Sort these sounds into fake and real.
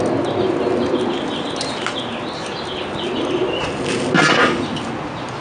real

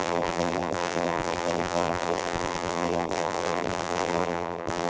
fake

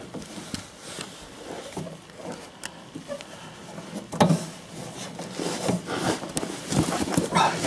real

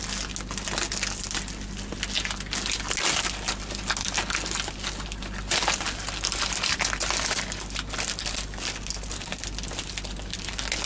real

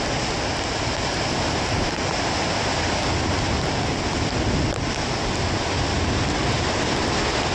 real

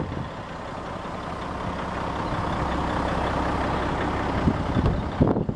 real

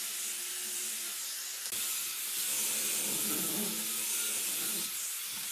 real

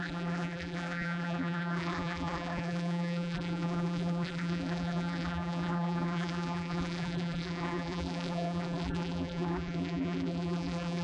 fake